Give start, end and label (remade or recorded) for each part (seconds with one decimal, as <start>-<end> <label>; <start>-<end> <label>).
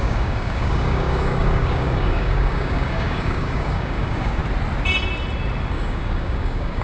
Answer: 0.0-4.4 remade; 4.4-5.7 recorded; 5.7-6.8 remade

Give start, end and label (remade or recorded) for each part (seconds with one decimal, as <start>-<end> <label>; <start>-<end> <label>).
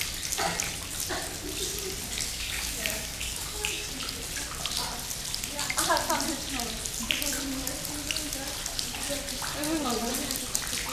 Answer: 0.0-2.3 recorded; 2.3-3.9 remade; 3.9-10.9 recorded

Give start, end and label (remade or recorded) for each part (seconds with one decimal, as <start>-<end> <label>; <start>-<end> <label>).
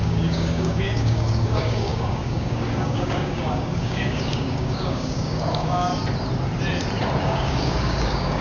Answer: 0.0-5.9 remade; 5.9-7.2 recorded; 7.2-8.4 remade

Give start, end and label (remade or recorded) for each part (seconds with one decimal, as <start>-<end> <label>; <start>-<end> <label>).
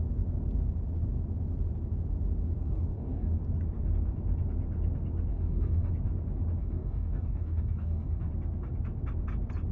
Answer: 0.0-2.6 recorded; 2.6-3.4 remade; 3.4-5.3 recorded; 5.3-5.9 remade; 5.9-6.6 recorded; 6.6-8.3 remade; 8.3-9.7 recorded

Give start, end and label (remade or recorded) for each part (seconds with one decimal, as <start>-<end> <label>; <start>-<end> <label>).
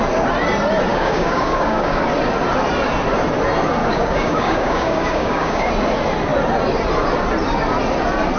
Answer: 0.0-0.9 recorded; 0.9-2.0 remade; 2.0-3.8 recorded; 3.8-5.7 remade; 5.7-8.4 recorded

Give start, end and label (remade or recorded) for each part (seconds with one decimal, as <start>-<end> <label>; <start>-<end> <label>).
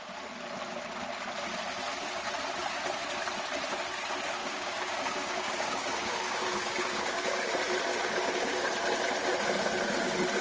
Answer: 0.0-4.4 recorded; 4.4-7.4 remade; 7.4-7.9 recorded; 7.9-8.7 remade; 8.7-10.4 recorded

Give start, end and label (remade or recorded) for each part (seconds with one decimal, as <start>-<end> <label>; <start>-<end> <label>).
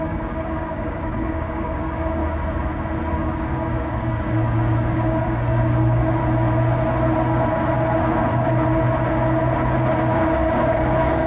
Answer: 0.0-2.2 remade; 2.2-3.1 recorded; 3.1-6.2 remade; 6.2-10.1 recorded; 10.1-11.3 remade